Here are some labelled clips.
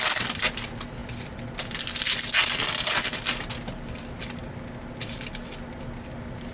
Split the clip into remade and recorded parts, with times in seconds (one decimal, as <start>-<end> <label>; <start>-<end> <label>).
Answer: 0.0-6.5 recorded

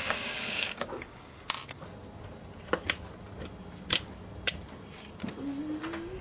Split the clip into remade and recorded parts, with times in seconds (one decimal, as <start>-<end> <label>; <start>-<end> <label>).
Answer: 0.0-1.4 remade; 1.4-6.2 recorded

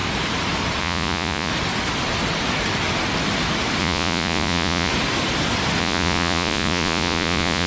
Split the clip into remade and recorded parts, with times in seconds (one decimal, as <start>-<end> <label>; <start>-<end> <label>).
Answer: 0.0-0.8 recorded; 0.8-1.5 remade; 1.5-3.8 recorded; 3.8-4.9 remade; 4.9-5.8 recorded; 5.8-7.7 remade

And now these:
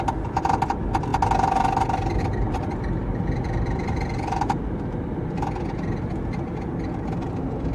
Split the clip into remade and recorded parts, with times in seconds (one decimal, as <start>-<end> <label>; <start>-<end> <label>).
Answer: 0.0-1.1 remade; 1.1-2.2 recorded; 2.2-7.7 remade

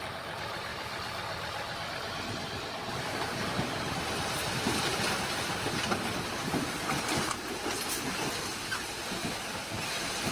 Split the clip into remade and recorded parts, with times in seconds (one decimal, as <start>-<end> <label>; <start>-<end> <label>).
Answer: 0.0-0.7 recorded; 0.7-4.0 remade; 4.0-10.3 recorded